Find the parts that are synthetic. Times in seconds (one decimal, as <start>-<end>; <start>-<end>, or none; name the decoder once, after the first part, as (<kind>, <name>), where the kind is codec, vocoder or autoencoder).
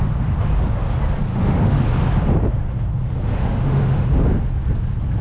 1.3-1.8 (autoencoder, DAC-VAE); 3.3-4.1